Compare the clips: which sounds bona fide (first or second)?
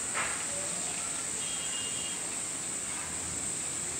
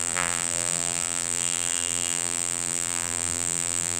first